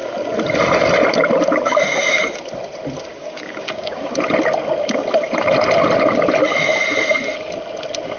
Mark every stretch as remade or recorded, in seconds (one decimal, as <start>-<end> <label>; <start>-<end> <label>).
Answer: 0.0-3.1 recorded; 3.1-4.1 remade; 4.1-8.2 recorded